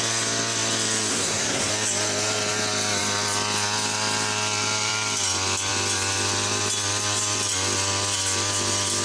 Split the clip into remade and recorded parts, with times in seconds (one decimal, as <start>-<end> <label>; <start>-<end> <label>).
0.0-1.1 recorded; 1.1-1.7 remade; 1.7-9.0 recorded